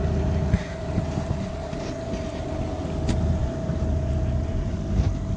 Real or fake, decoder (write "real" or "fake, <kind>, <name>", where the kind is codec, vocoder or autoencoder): real